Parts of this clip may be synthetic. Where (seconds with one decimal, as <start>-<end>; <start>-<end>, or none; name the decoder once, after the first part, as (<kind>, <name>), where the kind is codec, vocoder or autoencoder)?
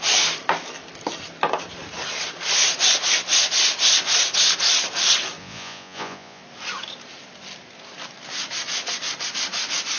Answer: 5.4-6.4 (vocoder, Vocos)